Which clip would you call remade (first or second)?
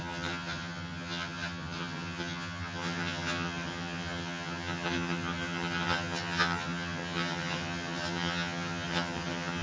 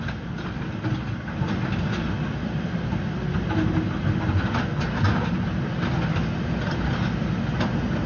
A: first